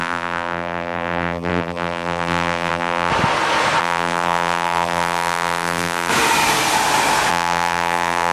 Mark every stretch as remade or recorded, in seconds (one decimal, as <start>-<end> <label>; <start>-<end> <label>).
0.0-3.1 remade; 3.1-3.8 recorded; 3.8-6.1 remade; 6.1-7.3 recorded; 7.3-8.3 remade